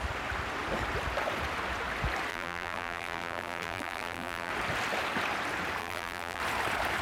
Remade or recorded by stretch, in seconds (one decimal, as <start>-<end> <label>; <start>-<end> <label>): 0.0-2.3 recorded; 2.3-4.5 remade; 4.5-5.8 recorded; 5.8-6.4 remade; 6.4-7.0 recorded